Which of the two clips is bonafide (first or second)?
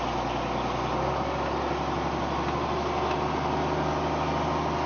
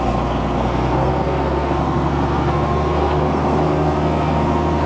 first